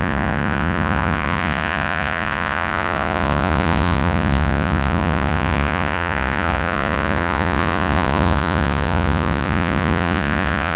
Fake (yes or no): yes